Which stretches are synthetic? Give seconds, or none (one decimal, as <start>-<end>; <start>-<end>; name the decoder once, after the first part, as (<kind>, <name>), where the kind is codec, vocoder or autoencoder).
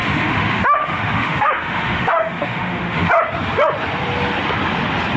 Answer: 0.0-3.1 (autoencoder, DAC-VAE)